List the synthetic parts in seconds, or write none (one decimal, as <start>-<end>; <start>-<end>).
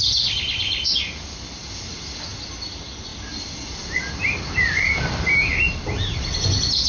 none